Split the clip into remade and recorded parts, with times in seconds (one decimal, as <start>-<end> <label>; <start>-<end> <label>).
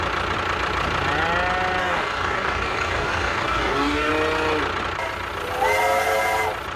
0.0-1.8 recorded; 1.8-4.1 remade; 4.1-6.8 recorded